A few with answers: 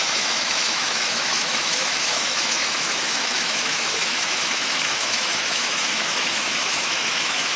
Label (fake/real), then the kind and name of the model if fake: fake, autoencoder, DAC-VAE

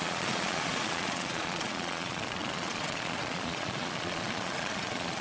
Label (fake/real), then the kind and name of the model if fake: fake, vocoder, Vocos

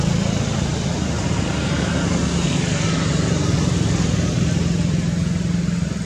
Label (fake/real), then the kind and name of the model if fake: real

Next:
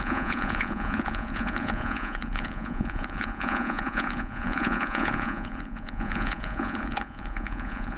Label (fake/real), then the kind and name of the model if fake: fake, vocoder, Vocos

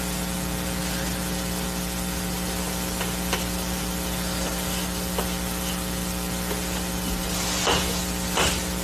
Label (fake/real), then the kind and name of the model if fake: real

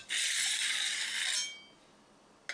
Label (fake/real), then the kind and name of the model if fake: real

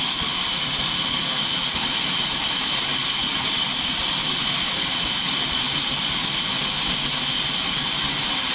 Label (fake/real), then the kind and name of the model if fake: real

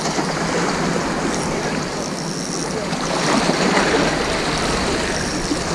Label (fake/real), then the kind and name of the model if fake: real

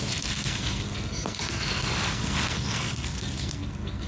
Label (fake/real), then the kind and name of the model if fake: fake, codec, SNAC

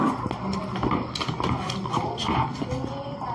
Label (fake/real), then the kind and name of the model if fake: real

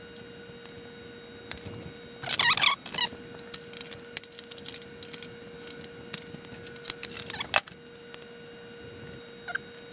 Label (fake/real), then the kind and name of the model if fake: real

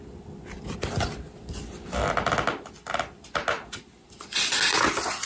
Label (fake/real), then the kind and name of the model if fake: real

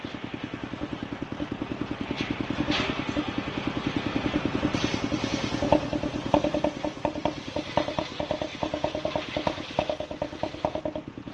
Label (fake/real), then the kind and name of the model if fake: fake, vocoder, BigVGAN v2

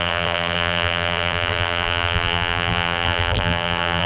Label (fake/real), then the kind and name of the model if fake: fake, vocoder, BigVGAN v2